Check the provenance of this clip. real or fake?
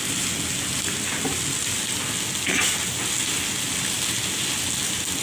real